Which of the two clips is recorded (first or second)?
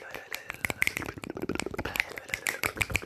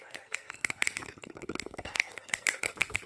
first